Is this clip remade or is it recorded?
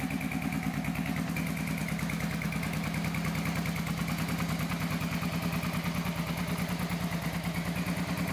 recorded